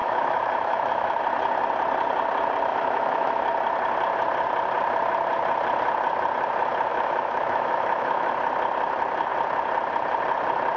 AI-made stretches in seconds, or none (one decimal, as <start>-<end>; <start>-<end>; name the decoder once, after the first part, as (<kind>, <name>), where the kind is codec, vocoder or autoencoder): 0.0-1.2 (autoencoder, DAC-VAE); 2.7-3.3; 6.9-8.3